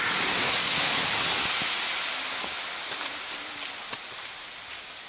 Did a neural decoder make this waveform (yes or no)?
no